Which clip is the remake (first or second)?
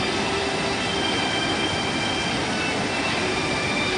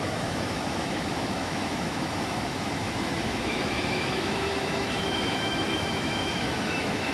second